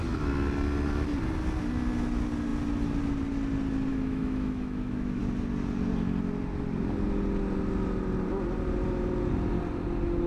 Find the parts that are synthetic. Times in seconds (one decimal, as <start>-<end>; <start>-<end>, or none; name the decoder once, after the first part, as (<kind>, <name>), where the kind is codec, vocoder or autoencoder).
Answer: 3.9-5.2 (autoencoder, DAC-VAE)